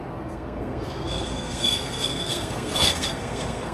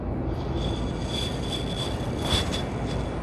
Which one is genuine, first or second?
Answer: second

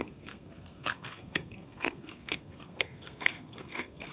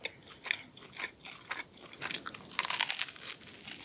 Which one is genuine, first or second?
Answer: second